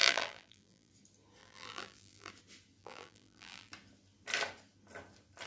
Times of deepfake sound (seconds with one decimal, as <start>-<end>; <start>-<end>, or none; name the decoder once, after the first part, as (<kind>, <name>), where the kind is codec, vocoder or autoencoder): 0.0-0.9 (vocoder, BigVGAN v2); 1.4-2.3; 2.8-3.7

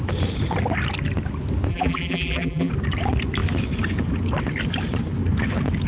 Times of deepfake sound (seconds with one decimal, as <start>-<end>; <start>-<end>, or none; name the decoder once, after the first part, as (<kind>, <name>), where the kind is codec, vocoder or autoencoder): 1.7-2.7 (vocoder, BigVGAN v2)

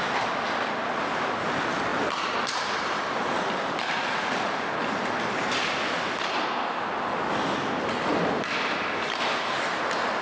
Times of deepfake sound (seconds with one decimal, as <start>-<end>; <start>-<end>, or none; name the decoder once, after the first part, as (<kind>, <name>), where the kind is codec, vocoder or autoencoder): 1.9-4.6 (vocoder, BigVGAN v2)

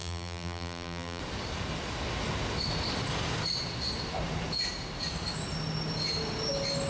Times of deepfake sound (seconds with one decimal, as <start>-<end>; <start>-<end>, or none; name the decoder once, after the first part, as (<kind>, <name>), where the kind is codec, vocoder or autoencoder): 0.0-1.2 (vocoder, BigVGAN v2)

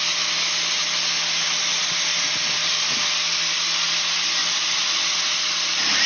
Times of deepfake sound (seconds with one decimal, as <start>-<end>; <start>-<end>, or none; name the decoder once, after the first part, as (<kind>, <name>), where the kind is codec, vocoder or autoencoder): 2.1-3.5 (vocoder, BigVGAN v2); 4.4-5.0

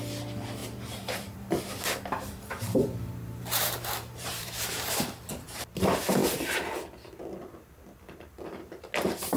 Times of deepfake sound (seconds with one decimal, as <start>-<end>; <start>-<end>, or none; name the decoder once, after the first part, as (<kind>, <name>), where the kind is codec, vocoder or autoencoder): 0.6-4.9 (vocoder, BigVGAN v2)

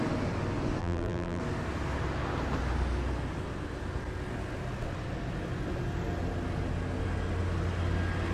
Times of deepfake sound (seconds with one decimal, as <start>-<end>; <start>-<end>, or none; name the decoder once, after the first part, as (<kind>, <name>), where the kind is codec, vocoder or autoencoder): 0.8-1.4 (vocoder, BigVGAN v2)

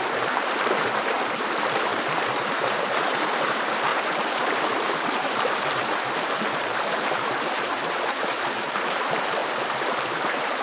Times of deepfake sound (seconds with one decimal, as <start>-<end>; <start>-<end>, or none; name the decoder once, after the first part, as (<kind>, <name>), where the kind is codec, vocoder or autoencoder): 0.0-1.9 (vocoder, BigVGAN v2); 2.4-10.6